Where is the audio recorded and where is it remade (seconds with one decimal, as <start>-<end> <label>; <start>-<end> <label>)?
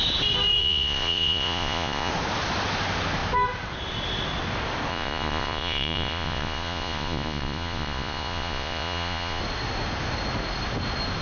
0.0-0.6 recorded; 0.6-2.1 remade; 2.1-4.9 recorded; 4.9-9.4 remade; 9.4-11.2 recorded